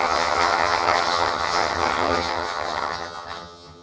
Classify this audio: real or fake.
fake